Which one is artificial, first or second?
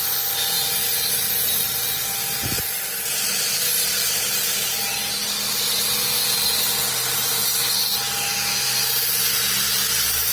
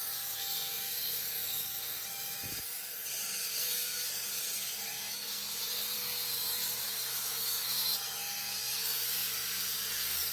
second